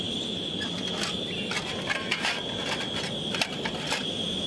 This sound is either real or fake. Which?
real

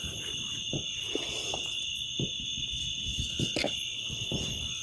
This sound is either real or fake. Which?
real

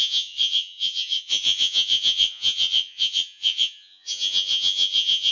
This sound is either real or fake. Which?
fake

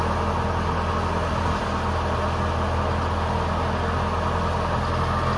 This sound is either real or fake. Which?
real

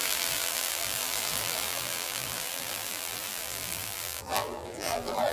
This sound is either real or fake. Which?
fake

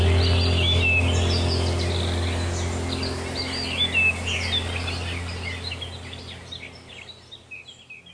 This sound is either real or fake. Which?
real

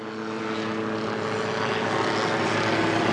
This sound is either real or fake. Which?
real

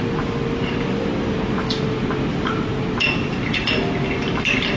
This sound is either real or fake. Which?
real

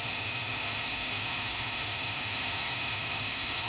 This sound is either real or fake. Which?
fake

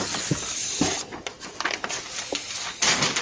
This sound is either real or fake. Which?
real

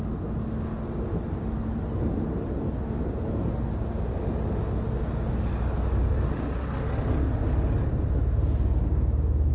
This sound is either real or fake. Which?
real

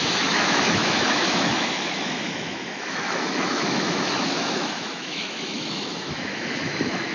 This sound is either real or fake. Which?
fake